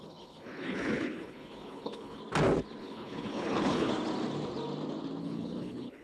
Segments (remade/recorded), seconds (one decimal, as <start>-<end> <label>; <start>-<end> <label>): 0.0-2.2 remade; 2.2-2.8 recorded; 2.8-3.9 remade; 3.9-5.2 recorded; 5.2-6.0 remade